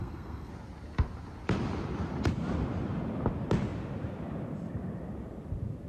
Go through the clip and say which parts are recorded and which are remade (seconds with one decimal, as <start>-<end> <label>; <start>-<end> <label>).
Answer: 0.0-0.5 remade; 0.5-5.9 recorded